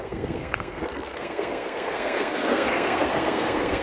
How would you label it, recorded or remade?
remade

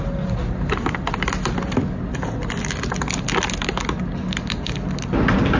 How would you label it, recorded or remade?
recorded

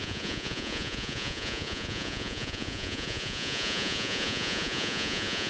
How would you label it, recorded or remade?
remade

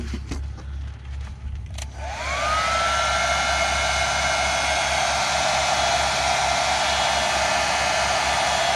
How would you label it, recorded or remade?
recorded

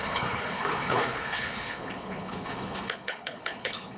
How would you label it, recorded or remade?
remade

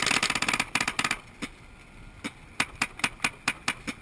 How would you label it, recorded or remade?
recorded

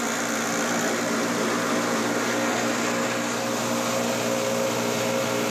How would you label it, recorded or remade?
recorded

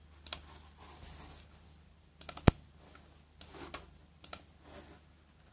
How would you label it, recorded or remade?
recorded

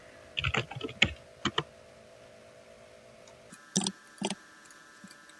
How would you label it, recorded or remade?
recorded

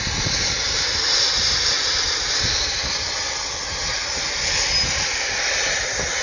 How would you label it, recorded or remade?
recorded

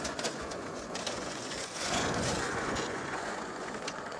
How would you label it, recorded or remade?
remade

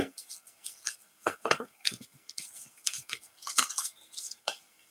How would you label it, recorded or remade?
remade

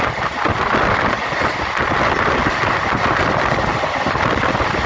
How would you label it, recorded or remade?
recorded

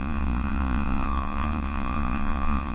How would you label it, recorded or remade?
remade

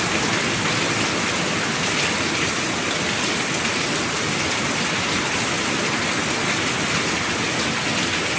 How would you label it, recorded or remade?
recorded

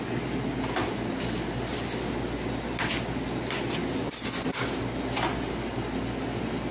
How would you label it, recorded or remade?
recorded